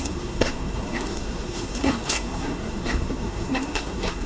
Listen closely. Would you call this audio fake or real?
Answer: fake